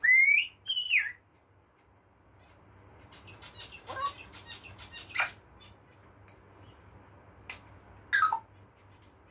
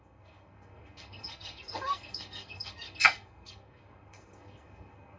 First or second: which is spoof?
second